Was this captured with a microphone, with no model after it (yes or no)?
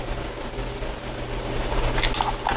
yes